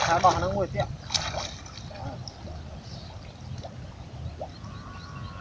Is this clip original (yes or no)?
yes